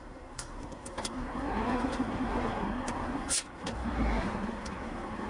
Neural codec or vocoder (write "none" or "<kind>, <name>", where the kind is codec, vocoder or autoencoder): codec, SNAC